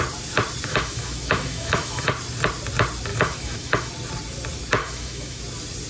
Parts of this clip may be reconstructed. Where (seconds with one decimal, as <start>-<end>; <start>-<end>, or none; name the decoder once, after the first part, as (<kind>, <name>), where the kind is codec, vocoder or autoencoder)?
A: 0.7-2.1 (autoencoder, DAC-VAE); 3.1-3.9; 4.8-5.4